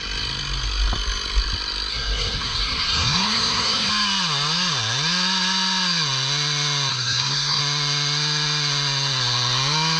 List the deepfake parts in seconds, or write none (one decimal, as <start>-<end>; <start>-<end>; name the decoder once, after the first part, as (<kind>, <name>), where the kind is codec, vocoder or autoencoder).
1.9-3.9 (codec, SNAC); 6.9-7.6